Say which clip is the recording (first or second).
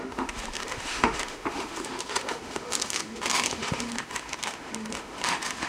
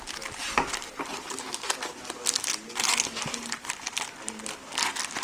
second